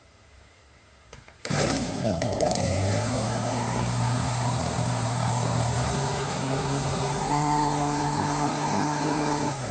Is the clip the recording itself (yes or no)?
no